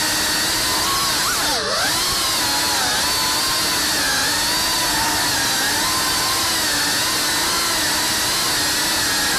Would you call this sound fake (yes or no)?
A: no